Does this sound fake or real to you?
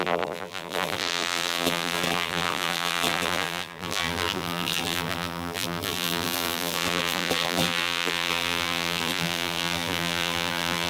fake